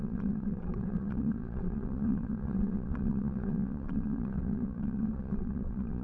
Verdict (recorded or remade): remade